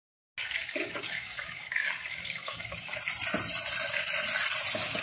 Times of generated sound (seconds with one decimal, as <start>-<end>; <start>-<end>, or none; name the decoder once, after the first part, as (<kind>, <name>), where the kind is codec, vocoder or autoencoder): 0.4-3.0 (codec, DAC)